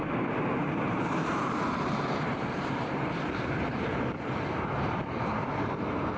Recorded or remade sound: remade